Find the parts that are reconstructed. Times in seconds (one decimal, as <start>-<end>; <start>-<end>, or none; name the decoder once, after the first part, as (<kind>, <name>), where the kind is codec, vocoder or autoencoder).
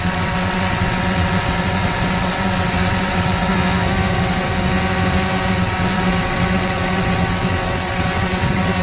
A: 0.0-3.5 (vocoder, WaveNeXt); 4.1-4.5; 5.6-8.8